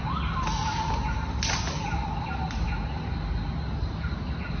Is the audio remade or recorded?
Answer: recorded